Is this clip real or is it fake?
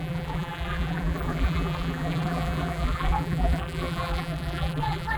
fake